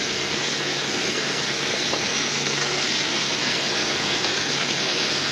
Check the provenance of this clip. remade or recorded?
remade